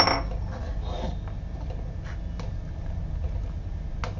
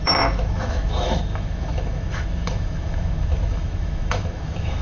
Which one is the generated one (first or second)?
second